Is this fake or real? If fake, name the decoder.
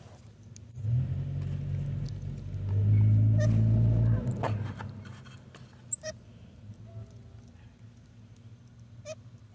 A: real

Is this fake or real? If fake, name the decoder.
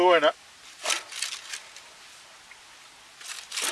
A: real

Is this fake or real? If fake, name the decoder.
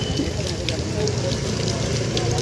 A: real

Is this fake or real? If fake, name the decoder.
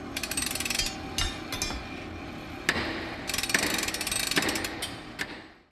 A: real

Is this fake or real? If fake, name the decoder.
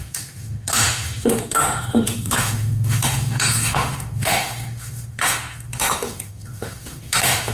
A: fake, autoencoder, DAC-VAE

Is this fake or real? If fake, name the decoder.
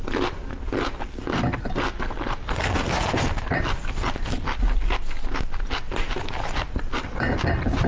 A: real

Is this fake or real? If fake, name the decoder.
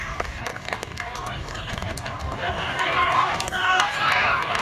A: fake, codec, DAC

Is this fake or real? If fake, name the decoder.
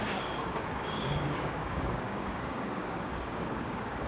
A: fake, codec, DAC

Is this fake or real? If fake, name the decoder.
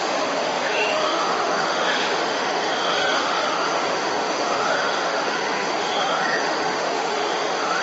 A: fake, autoencoder, DAC-VAE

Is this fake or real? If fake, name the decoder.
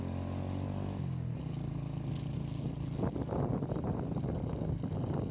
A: real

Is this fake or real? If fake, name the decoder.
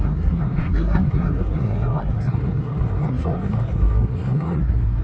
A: fake, codec, SNAC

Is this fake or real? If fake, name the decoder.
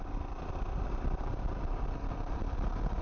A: real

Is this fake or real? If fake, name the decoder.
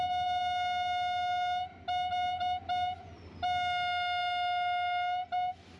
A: real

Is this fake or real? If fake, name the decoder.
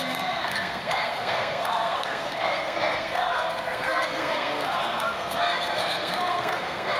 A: fake, codec, SNAC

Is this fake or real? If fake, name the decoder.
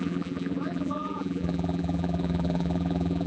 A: fake, vocoder, BigVGAN v2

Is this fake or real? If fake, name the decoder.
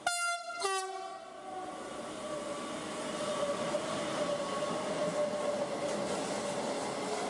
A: real